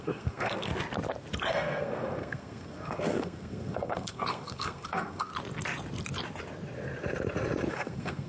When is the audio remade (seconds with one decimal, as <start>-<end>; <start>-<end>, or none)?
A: 0.0-0.7; 1.5-5.3; 7.7-8.3

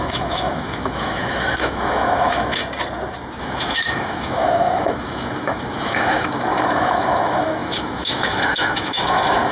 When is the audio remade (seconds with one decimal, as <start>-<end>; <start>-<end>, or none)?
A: 0.0-2.6; 3.4-9.5